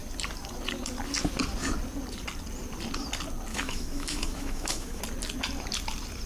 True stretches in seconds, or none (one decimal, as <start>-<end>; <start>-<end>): 0.0-3.5; 5.0-6.3